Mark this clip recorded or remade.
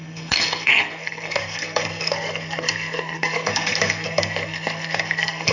remade